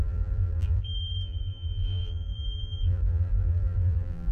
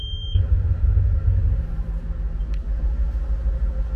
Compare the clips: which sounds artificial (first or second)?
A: first